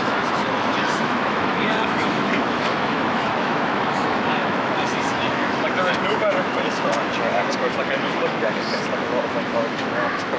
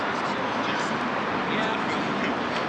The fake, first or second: first